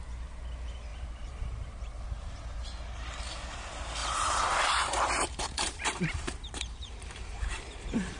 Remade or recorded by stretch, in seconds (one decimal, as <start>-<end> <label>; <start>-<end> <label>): 0.0-0.9 recorded; 0.9-2.4 remade; 2.4-4.0 recorded; 4.0-7.6 remade; 7.6-8.2 recorded